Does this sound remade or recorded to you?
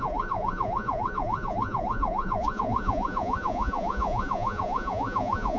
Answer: remade